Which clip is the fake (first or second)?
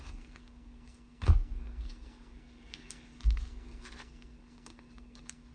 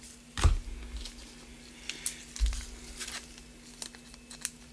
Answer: first